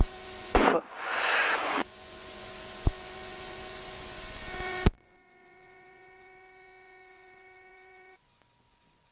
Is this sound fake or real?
fake